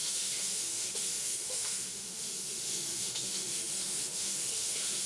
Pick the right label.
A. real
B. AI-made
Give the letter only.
B